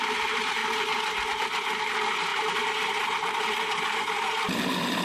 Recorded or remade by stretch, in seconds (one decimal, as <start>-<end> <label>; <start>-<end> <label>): 0.0-0.6 remade; 0.6-1.8 recorded; 1.8-5.0 remade